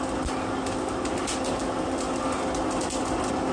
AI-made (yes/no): no